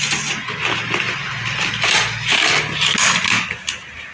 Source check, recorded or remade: recorded